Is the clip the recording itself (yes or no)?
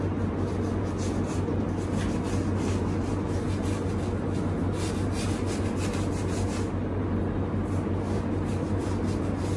yes